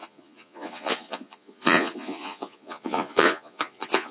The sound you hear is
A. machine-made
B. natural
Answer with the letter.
A